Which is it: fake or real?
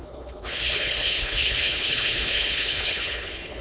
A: fake